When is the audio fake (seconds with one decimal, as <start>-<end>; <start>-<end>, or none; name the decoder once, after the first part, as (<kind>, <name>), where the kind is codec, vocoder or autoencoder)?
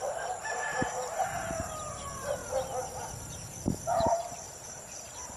0.0-2.4 (vocoder, BigVGAN v2); 3.3-5.4